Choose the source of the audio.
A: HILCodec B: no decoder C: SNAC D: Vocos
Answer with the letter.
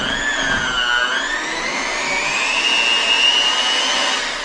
B